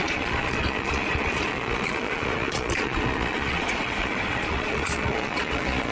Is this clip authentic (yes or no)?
no